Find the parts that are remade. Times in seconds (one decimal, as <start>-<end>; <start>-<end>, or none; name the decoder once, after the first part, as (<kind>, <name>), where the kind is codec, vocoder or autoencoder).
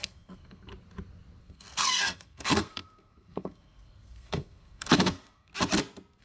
0.0-0.7 (codec, SNAC); 1.4-5.5